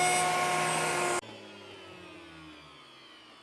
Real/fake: real